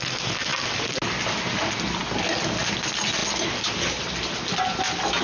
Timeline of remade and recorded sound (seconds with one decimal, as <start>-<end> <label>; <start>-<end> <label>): 0.0-5.2 recorded